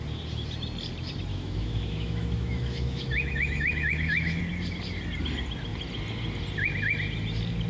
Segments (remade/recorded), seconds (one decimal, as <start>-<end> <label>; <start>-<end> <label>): 0.0-1.3 recorded; 1.3-4.4 remade; 4.4-7.7 recorded